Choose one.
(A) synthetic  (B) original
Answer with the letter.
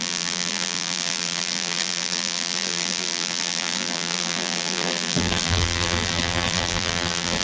A